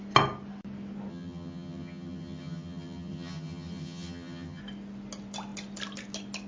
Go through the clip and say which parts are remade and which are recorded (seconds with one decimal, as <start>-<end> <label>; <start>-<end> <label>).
0.0-1.1 recorded; 1.1-4.6 remade; 4.6-6.5 recorded